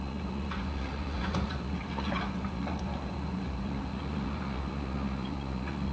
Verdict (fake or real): fake